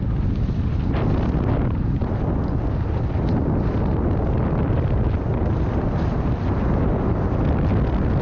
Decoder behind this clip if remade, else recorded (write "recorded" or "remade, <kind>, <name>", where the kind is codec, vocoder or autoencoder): recorded